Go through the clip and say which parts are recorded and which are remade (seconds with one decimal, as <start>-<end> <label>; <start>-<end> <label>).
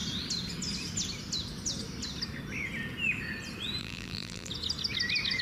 0.0-3.8 recorded; 3.8-4.5 remade; 4.5-5.4 recorded